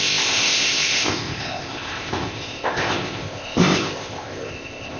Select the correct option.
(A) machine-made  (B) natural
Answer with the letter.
A